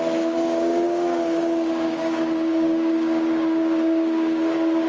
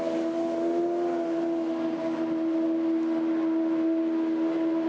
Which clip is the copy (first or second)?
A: first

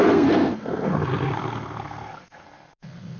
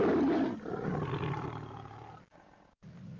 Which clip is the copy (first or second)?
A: first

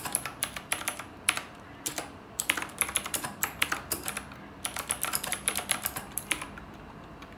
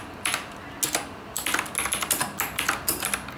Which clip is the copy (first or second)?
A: first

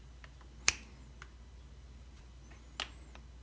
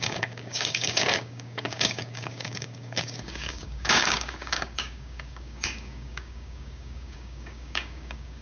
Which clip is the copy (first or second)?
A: second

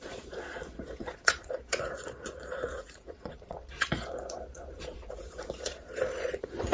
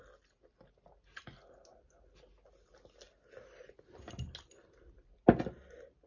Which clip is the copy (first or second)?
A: first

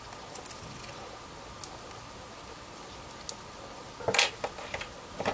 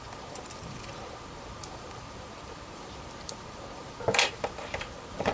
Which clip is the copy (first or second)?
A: second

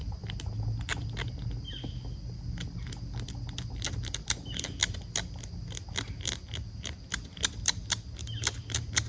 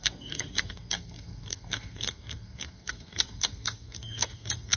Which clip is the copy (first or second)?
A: second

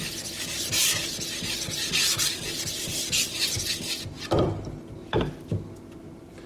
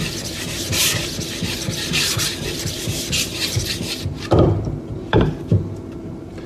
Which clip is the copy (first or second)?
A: second